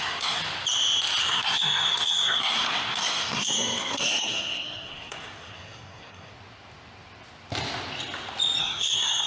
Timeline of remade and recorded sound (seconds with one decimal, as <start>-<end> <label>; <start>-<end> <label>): 0.0-0.4 remade; 0.4-1.2 recorded; 1.2-6.3 remade; 6.3-8.6 recorded; 8.6-9.3 remade